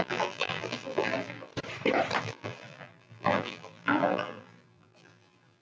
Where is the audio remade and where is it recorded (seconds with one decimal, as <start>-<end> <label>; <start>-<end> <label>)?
0.0-1.5 remade; 1.5-2.2 recorded; 2.2-5.6 remade